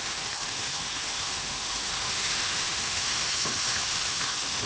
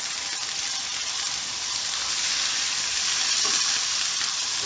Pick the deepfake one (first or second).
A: first